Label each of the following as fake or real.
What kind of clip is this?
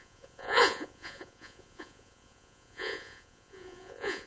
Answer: fake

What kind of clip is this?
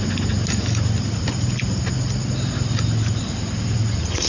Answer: real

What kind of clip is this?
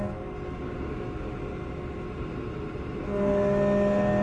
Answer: real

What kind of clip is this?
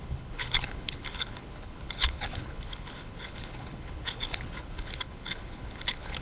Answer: fake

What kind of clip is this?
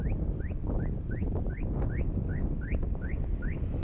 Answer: real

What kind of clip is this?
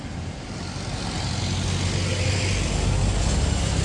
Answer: real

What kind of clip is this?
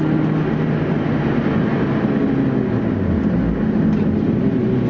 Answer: real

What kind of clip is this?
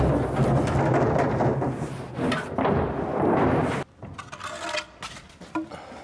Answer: real